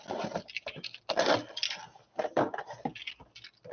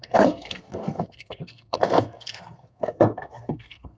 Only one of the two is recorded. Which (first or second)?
first